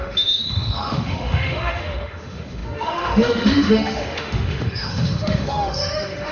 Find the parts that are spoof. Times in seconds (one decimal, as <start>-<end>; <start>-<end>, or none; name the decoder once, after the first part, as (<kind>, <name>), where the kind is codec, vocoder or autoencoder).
0.0-6.3 (autoencoder, DAC-VAE)